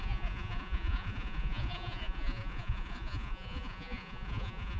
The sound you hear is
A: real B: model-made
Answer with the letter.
B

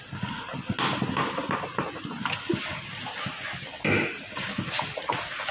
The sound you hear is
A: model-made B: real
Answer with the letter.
B